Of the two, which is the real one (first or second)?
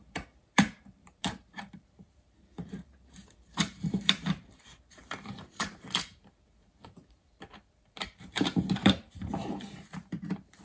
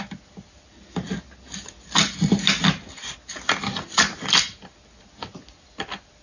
second